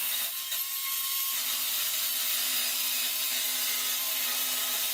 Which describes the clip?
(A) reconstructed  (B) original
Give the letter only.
B